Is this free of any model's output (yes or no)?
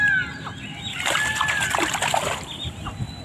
yes